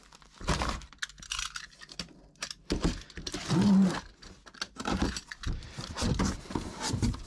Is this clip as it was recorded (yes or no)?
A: yes